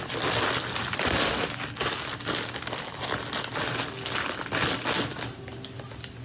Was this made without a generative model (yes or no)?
yes